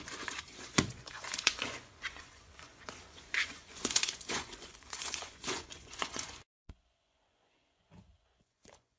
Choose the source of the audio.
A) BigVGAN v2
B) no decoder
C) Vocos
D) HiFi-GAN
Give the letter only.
C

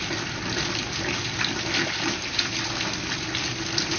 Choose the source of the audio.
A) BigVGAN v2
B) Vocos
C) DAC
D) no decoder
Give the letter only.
D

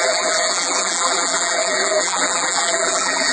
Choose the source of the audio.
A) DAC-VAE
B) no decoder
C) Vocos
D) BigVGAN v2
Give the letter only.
D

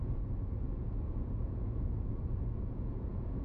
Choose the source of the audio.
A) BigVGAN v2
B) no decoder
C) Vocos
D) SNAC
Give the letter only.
C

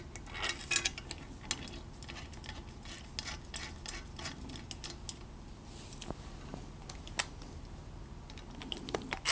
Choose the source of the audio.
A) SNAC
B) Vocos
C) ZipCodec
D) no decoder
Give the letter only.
D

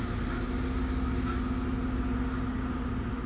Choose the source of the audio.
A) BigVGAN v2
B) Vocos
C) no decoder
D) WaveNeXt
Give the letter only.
C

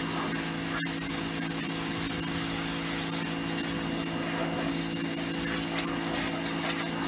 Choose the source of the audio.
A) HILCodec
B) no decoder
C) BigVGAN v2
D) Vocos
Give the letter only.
B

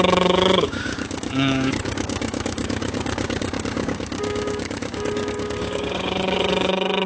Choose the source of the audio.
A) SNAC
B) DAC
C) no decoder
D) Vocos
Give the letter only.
B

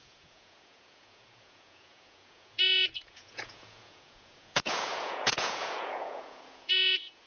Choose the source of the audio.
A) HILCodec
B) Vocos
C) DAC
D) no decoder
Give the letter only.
B